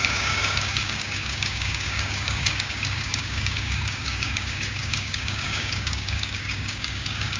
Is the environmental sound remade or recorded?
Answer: remade